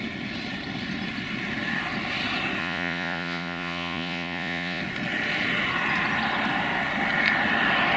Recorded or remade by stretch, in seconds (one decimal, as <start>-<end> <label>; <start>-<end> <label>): 0.0-2.6 recorded; 2.6-4.8 remade; 4.8-8.0 recorded